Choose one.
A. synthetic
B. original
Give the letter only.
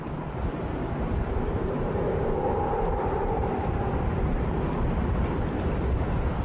B